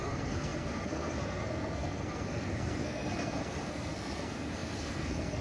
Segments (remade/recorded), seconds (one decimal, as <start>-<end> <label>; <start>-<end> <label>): 0.0-5.4 remade

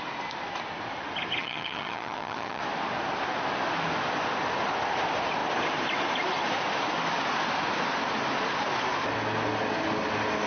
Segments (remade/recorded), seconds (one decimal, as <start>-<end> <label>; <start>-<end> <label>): 0.0-1.4 recorded; 1.4-2.6 remade; 2.6-10.5 recorded

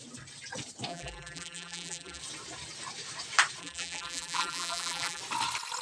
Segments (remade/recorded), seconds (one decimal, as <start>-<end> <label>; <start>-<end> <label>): 0.0-0.9 recorded; 0.9-2.2 remade; 2.2-3.6 recorded; 3.6-5.2 remade; 5.2-5.8 recorded

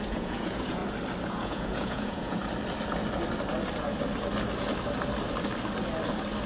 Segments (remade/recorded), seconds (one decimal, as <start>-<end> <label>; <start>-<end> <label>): 0.0-0.8 remade; 0.8-1.3 recorded; 1.3-2.4 remade; 2.4-6.5 recorded

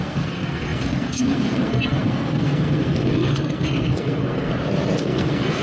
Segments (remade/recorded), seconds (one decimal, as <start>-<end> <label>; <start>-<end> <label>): 0.0-4.5 remade; 4.5-5.0 recorded; 5.0-5.6 remade